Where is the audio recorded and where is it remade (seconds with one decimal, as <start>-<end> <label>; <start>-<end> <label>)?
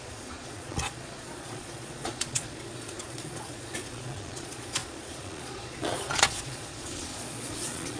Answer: 0.0-8.0 remade